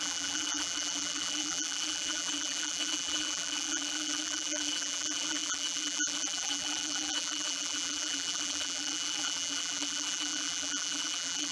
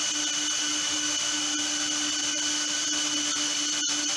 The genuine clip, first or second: second